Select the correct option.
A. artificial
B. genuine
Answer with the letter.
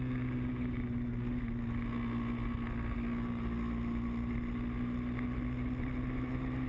B